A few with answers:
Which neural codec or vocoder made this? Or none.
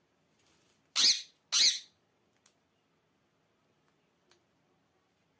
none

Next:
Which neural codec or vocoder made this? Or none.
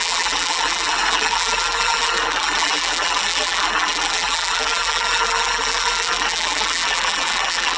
vocoder, BigVGAN v2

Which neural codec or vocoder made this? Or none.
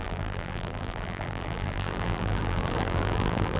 vocoder, BigVGAN v2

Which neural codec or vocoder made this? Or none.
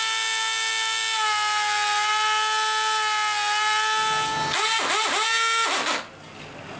none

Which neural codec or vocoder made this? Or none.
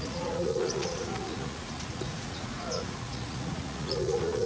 vocoder, Vocos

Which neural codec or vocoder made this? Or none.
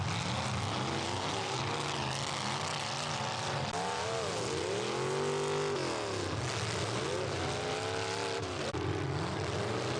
none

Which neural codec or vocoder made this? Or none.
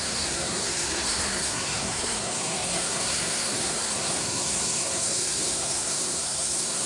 codec, SNAC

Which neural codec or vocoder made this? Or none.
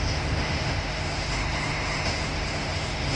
autoencoder, DAC-VAE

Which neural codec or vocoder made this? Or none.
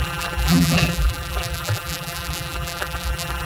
vocoder, BigVGAN v2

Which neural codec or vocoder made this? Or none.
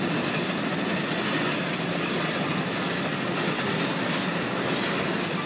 none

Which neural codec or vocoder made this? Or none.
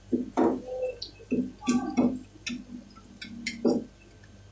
none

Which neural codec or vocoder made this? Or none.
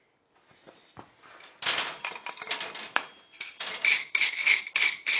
none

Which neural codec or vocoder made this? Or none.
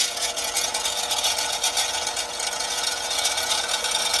vocoder, Vocos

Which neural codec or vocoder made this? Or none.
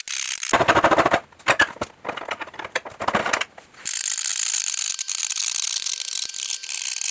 none